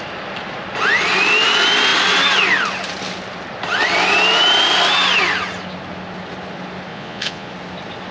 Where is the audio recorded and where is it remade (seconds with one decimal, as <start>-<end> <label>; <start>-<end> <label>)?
0.0-6.9 recorded; 6.9-7.5 remade; 7.5-8.1 recorded